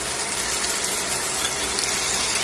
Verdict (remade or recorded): recorded